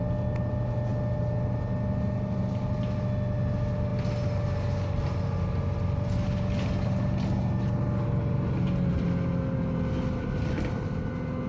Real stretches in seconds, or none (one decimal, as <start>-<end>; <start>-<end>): 0.0-11.5